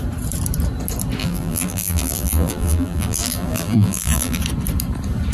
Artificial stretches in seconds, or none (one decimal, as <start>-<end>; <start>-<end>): 1.2-4.4